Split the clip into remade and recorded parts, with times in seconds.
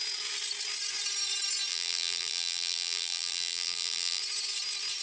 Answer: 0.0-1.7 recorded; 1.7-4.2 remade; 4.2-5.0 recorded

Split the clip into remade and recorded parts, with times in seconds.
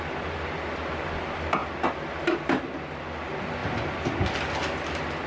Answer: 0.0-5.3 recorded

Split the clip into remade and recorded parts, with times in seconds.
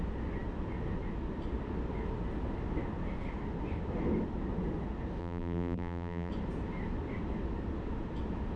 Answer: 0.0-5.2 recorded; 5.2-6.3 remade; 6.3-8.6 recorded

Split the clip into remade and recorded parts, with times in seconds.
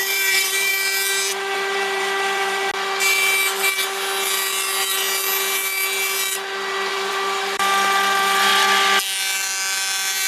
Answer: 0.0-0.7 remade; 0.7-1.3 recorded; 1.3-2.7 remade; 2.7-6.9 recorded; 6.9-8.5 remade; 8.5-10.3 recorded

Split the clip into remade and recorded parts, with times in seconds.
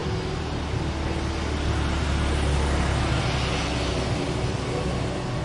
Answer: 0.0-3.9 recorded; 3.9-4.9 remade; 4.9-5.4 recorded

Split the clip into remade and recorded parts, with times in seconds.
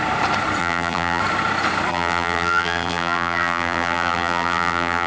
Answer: 0.0-0.6 recorded; 0.6-1.2 remade; 1.2-1.9 recorded; 1.9-5.1 remade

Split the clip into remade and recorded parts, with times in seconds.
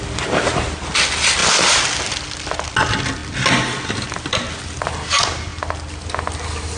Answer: 0.0-6.8 recorded